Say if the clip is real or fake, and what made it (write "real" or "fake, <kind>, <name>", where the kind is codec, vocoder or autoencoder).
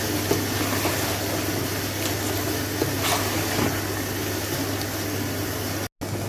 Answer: real